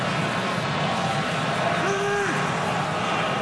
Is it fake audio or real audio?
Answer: real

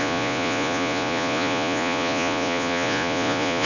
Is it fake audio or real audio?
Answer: fake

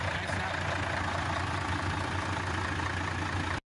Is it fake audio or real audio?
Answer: real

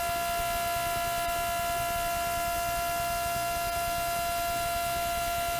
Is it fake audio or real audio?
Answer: real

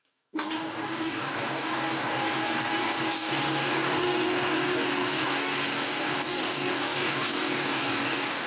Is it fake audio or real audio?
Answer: fake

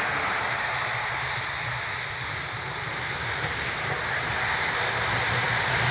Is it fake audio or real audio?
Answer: real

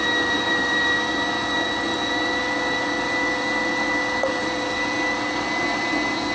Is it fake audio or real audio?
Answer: real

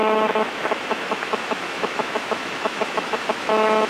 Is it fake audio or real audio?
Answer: fake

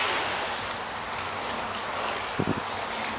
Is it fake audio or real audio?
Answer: real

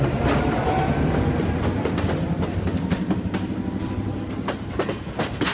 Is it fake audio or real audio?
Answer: real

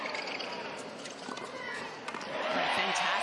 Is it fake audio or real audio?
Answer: real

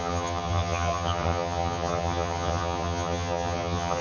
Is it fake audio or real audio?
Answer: fake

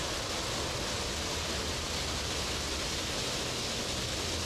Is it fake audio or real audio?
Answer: real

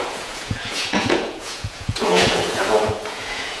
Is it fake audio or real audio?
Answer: fake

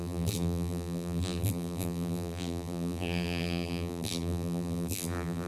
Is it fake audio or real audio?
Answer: fake